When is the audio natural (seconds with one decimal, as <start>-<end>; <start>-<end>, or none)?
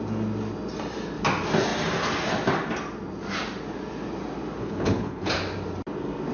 0.0-4.6; 5.3-6.3